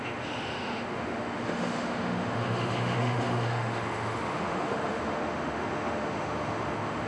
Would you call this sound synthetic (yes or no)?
yes